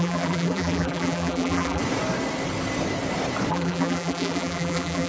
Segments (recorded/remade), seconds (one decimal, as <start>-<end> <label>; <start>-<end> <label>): 0.0-1.8 remade; 1.8-3.5 recorded; 3.5-5.1 remade